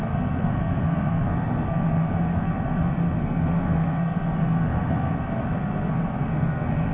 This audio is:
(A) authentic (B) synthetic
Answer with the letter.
B